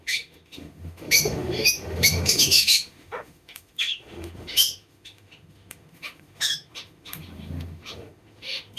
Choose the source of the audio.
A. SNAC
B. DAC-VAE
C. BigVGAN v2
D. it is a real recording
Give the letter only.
B